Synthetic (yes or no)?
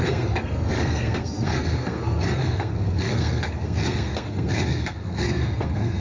yes